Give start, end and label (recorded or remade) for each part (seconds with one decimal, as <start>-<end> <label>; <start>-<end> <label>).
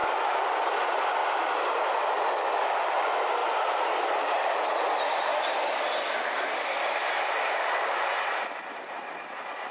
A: 0.0-0.7 remade; 0.7-5.3 recorded; 5.3-8.1 remade; 8.1-9.7 recorded